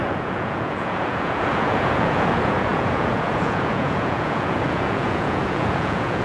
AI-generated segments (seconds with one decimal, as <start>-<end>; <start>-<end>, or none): 0.0-6.2